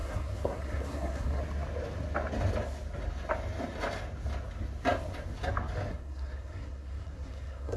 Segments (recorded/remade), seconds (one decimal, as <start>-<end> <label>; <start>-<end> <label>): 0.0-1.4 remade; 1.4-5.9 recorded; 5.9-7.8 remade